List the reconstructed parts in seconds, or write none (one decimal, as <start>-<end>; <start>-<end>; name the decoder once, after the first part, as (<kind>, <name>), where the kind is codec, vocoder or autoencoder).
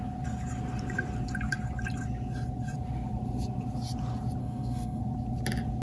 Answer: 4.4-5.0 (codec, SNAC)